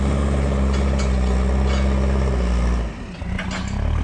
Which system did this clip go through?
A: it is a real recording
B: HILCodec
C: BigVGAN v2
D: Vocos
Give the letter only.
A